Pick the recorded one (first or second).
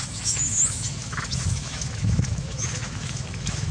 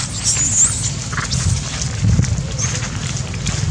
second